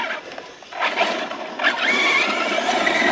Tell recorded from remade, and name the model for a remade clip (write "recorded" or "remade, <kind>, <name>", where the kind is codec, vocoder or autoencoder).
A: recorded